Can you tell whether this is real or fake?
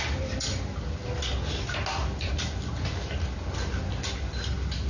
real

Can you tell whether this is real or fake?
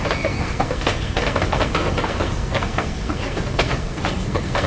fake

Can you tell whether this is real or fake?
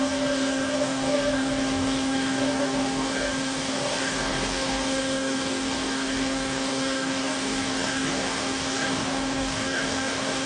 fake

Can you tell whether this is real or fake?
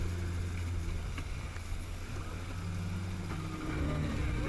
real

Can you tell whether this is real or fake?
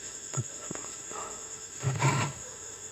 fake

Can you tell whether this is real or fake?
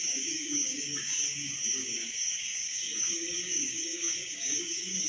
fake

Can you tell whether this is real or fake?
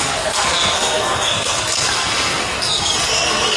fake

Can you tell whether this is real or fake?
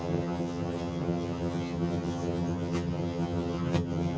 fake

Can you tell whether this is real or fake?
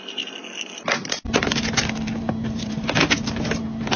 real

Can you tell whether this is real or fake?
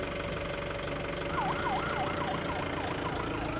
real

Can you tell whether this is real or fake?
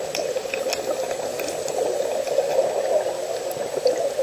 real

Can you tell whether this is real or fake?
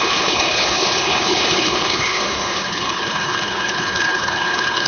fake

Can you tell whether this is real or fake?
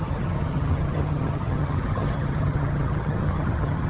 fake